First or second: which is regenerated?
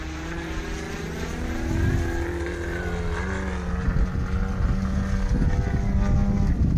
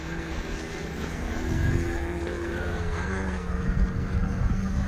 second